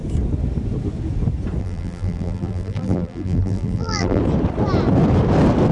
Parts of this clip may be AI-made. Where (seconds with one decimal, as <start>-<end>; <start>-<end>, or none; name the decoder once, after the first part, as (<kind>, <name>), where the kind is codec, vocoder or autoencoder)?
1.6-4.2 (vocoder, BigVGAN v2)